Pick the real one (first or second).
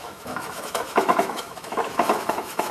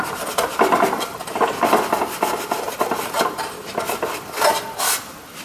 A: second